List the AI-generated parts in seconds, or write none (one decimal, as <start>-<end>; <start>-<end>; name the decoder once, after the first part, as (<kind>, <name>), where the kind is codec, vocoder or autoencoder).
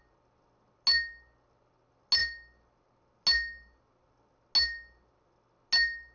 none